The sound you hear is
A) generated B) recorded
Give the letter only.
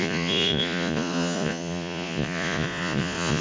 A